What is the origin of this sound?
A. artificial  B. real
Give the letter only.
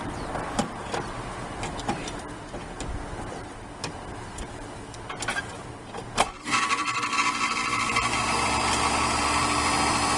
A